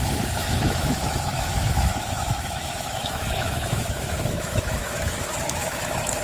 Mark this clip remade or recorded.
remade